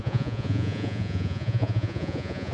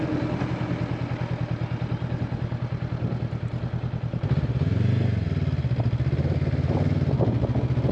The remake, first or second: first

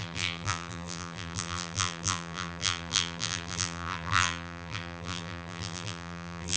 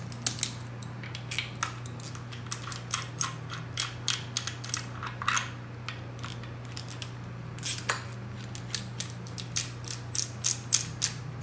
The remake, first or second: first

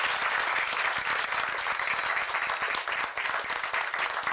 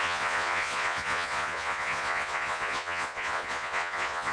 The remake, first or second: second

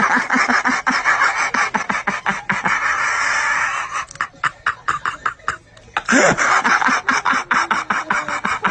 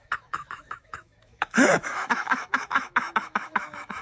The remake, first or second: second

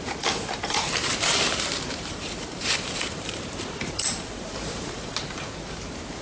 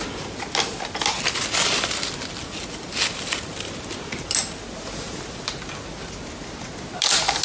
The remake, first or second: first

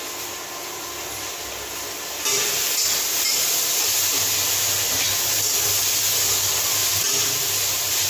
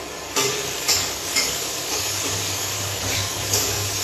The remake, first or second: second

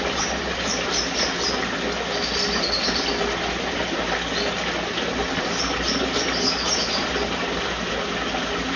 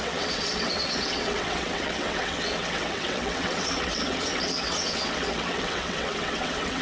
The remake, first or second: second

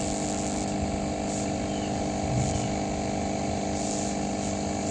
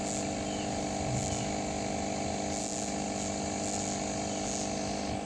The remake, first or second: first